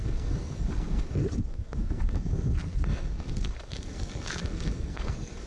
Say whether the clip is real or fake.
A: fake